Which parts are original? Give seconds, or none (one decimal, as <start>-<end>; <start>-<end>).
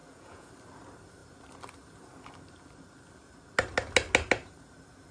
0.5-5.1